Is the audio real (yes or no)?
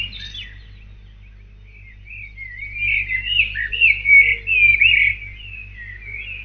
yes